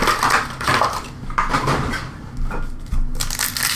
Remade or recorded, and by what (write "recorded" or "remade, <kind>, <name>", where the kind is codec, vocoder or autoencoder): recorded